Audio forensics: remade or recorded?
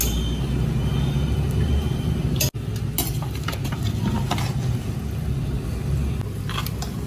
recorded